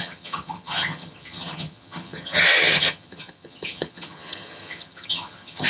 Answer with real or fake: fake